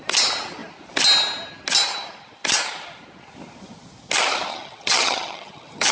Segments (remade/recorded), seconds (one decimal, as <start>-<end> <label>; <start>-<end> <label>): 0.0-4.5 recorded; 4.5-5.9 remade